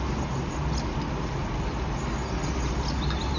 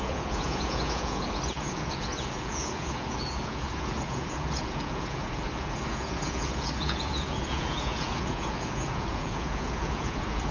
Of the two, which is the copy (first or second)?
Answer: second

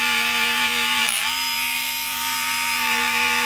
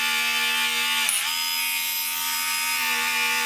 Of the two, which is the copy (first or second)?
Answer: first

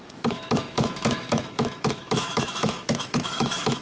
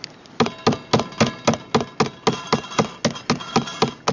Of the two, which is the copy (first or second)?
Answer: first